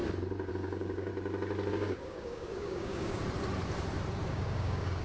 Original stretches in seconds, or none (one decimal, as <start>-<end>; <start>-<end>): 0.0-0.5; 1.1-1.7; 3.2-4.3